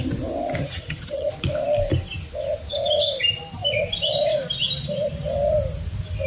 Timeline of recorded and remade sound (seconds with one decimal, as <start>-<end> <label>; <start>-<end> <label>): 0.0-0.6 recorded; 0.6-1.3 remade; 1.3-6.3 recorded